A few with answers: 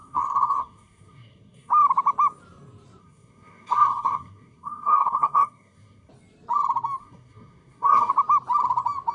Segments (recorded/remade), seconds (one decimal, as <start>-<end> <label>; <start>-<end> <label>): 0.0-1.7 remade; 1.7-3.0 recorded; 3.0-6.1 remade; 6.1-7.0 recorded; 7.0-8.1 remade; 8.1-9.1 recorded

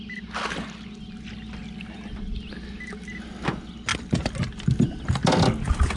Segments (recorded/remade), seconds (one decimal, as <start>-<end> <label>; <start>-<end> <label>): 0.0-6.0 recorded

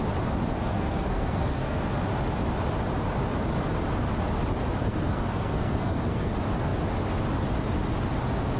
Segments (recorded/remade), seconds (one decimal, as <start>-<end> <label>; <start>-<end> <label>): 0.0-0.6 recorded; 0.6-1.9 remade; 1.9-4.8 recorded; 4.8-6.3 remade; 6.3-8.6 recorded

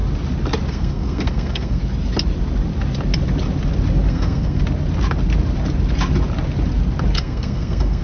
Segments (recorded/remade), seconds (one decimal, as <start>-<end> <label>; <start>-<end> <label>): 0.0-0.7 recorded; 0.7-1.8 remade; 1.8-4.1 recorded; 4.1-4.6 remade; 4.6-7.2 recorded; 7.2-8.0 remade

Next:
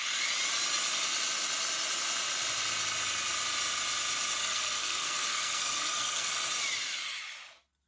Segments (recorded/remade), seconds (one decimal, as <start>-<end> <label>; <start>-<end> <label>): 0.0-4.4 recorded; 4.4-6.3 remade; 6.3-7.9 recorded

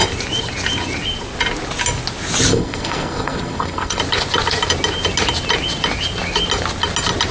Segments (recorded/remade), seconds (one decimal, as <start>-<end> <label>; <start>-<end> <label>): 0.0-2.5 recorded; 2.5-4.0 remade; 4.0-7.3 recorded

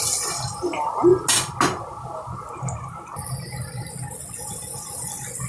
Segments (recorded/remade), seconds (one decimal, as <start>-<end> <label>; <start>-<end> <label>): 0.0-5.5 recorded

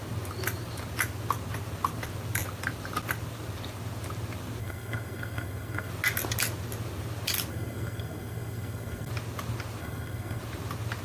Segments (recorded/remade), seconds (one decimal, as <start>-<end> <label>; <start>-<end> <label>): 0.0-4.6 recorded; 4.6-5.9 remade; 5.9-7.5 recorded; 7.5-9.1 remade; 9.1-9.8 recorded; 9.8-10.4 remade; 10.4-11.0 recorded